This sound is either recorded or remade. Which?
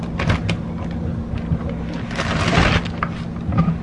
recorded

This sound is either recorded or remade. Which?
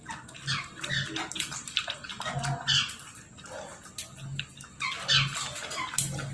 recorded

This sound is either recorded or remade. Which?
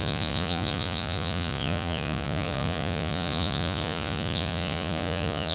remade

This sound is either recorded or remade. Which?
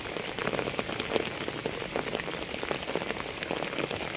recorded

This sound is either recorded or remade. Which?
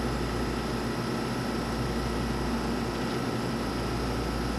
recorded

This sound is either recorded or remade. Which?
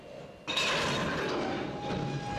recorded